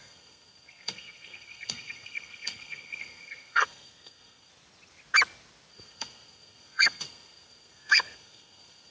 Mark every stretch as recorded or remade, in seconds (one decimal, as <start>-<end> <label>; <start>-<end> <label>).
0.0-4.5 remade; 4.5-5.7 recorded; 5.7-8.9 remade